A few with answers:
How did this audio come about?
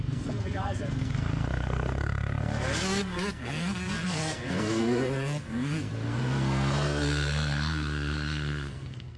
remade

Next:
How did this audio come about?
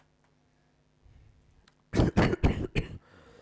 recorded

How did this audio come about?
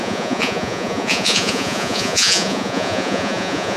remade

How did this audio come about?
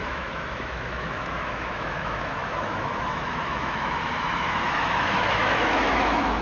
remade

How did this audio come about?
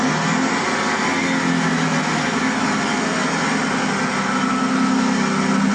recorded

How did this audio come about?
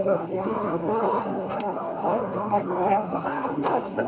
remade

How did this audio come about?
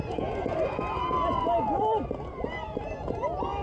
recorded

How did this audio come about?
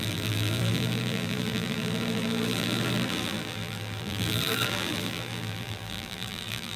remade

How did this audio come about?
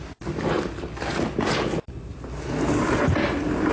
recorded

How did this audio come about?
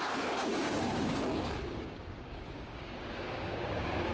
remade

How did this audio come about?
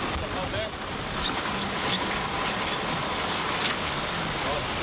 recorded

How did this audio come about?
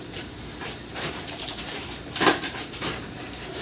remade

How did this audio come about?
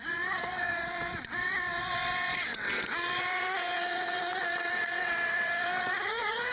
remade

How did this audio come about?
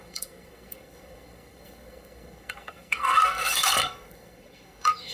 remade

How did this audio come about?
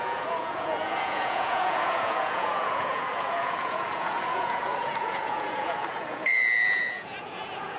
remade